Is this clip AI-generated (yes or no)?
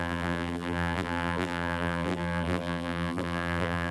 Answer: yes